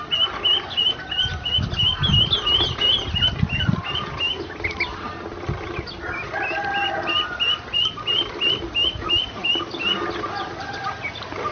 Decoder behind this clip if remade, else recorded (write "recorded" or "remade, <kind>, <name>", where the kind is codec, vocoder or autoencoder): recorded